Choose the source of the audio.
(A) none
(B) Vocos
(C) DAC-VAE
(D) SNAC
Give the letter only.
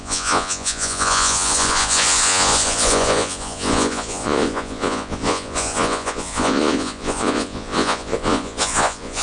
B